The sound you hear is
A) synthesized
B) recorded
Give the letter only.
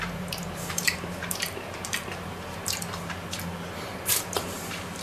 A